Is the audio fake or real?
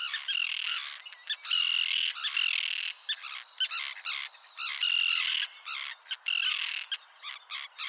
real